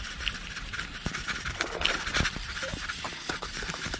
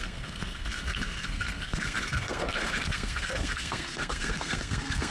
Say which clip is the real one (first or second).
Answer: first